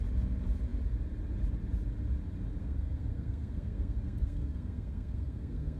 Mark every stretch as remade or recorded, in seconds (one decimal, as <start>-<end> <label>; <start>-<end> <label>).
0.0-2.6 recorded; 2.6-5.8 remade